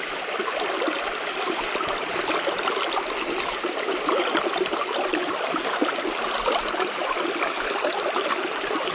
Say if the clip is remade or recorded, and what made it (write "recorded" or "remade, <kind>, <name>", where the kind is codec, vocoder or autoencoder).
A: recorded